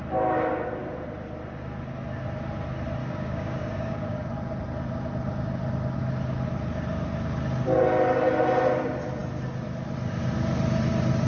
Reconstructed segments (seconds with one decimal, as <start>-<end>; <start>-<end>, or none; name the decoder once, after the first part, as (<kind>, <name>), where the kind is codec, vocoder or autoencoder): 3.0-4.3 (codec, DAC)